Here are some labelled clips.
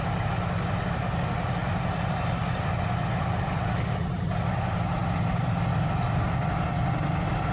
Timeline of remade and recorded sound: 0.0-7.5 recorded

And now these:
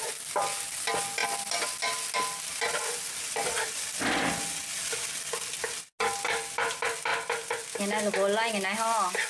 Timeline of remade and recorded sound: 0.0-9.3 recorded

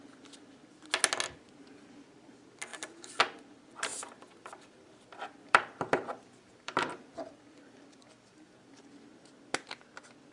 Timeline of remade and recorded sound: 0.0-3.9 recorded; 3.9-8.9 remade; 8.9-10.3 recorded